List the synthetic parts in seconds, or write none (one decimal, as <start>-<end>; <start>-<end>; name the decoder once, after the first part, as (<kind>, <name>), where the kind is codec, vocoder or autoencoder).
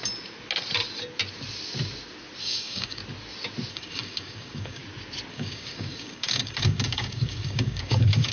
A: 2.4-3.0 (codec, DAC); 3.7-4.8; 5.3-8.3